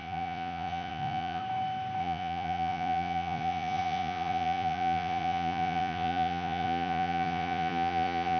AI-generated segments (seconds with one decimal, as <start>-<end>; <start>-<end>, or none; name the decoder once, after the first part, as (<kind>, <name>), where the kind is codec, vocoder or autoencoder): 0.0-1.4 (vocoder, Vocos); 2.0-8.4